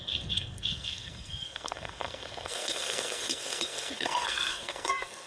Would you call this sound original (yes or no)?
no